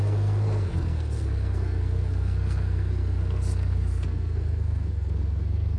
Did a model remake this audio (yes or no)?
yes